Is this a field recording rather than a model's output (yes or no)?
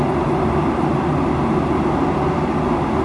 yes